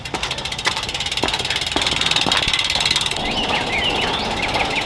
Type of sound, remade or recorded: recorded